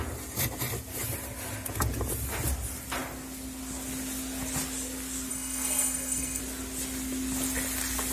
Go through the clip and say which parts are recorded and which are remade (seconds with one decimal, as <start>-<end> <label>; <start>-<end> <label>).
0.0-5.3 recorded; 5.3-6.4 remade; 6.4-8.1 recorded